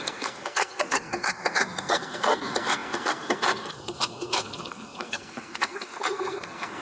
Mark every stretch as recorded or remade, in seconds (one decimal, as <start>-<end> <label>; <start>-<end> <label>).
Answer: 0.0-6.8 remade